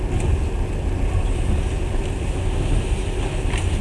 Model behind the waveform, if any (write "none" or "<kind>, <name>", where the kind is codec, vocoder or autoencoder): none